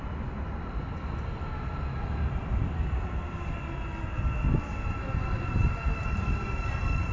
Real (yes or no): yes